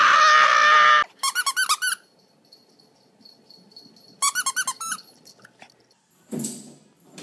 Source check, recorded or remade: recorded